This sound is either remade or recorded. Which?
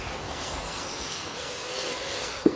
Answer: remade